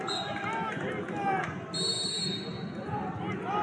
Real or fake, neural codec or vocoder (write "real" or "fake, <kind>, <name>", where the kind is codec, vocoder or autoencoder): real